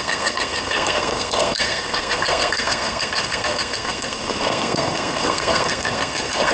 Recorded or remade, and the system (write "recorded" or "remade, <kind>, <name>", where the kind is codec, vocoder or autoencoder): remade, codec, SNAC